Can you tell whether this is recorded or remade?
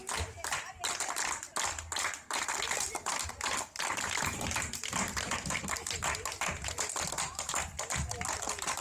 recorded